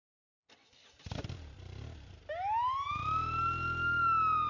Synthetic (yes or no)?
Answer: no